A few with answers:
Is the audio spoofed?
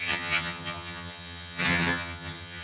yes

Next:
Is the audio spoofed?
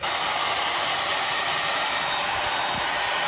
no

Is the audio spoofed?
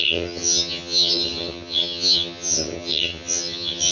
yes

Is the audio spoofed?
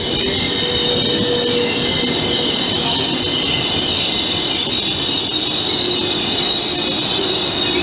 no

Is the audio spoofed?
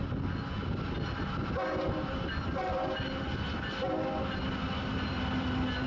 no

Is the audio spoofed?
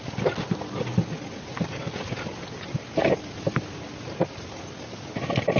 no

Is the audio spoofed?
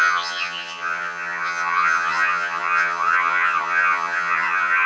yes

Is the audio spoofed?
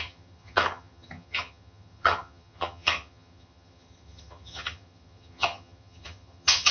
yes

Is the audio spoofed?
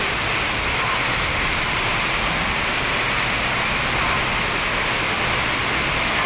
no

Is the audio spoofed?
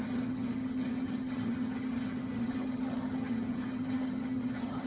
yes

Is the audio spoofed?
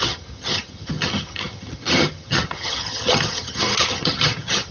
yes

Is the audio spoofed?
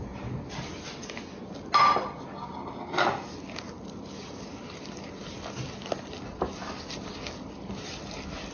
no